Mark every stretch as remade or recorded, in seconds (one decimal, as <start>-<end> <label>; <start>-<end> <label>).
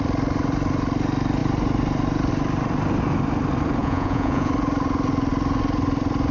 0.0-3.8 recorded; 3.8-4.5 remade; 4.5-6.3 recorded